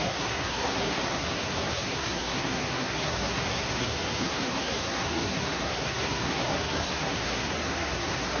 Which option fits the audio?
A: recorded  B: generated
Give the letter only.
B